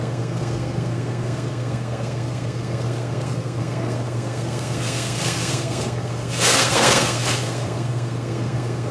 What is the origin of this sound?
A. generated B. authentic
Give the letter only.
A